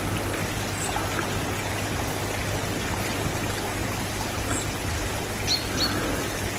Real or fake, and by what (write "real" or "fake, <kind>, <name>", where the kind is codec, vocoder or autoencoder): real